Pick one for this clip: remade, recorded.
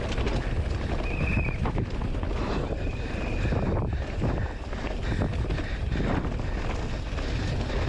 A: recorded